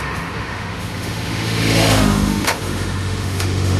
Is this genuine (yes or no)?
no